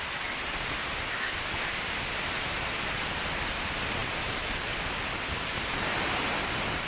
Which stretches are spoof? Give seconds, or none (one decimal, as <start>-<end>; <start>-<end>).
none